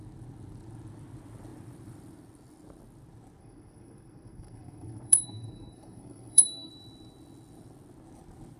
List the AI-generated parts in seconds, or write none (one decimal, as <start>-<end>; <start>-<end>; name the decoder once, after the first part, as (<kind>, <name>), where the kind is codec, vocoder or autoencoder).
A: 3.4-6.7 (codec, SNAC)